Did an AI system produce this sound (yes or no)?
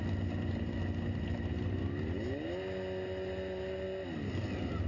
no